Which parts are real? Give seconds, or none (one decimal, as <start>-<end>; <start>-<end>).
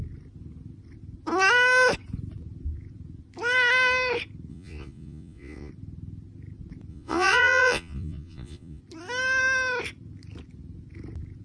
0.0-4.5; 5.7-6.9; 8.8-11.4